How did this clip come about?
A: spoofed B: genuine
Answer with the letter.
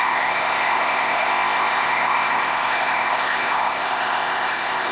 A